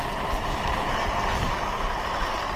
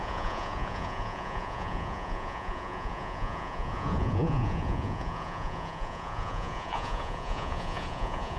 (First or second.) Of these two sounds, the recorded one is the first